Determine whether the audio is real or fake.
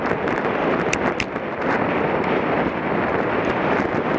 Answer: fake